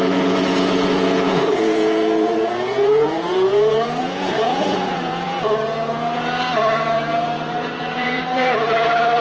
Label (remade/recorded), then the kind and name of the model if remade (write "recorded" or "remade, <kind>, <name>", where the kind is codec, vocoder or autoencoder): remade, vocoder, Vocos